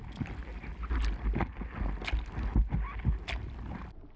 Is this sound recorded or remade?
recorded